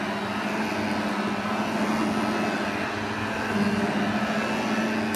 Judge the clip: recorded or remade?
recorded